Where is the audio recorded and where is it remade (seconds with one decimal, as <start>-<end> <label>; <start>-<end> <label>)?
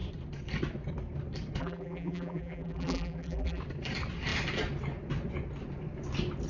0.0-1.6 recorded; 1.6-3.6 remade; 3.6-6.5 recorded